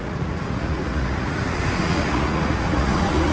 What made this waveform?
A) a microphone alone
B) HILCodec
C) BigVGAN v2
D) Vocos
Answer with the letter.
D